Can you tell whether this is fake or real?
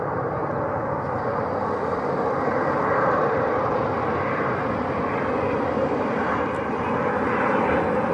real